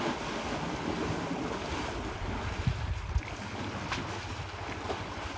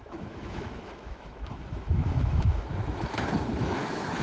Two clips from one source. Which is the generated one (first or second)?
second